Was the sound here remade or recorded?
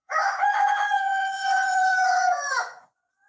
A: remade